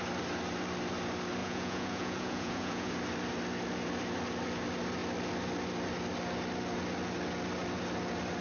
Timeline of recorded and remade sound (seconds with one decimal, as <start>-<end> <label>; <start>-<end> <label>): 0.0-1.4 recorded; 1.4-2.9 remade; 2.9-8.4 recorded